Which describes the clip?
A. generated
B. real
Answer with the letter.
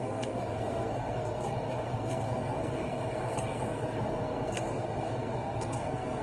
A